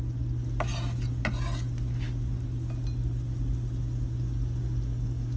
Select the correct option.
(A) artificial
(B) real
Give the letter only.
B